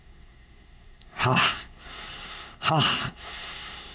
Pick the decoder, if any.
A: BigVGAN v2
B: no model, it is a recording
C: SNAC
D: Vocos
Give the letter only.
C